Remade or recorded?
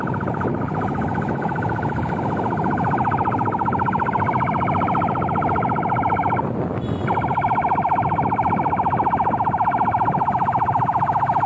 recorded